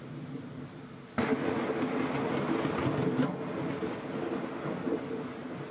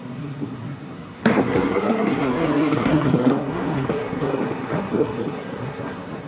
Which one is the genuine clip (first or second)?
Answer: first